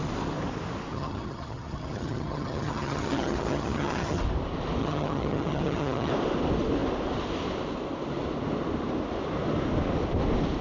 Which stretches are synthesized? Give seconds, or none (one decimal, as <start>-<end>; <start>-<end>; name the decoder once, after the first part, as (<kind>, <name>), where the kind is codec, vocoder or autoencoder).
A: 0.9-4.2 (vocoder, HiFi-GAN); 4.8-6.1